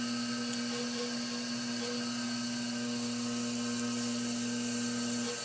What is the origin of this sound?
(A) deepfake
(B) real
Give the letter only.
B